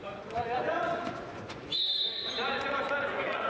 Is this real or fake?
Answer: fake